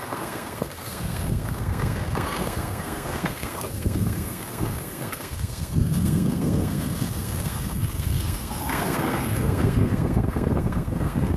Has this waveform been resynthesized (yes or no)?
yes